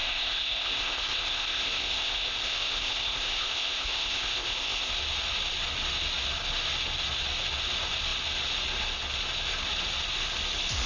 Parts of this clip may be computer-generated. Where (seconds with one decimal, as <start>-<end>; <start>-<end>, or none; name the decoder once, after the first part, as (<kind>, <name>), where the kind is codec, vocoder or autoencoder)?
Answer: 0.0-4.9 (codec, ZipCodec)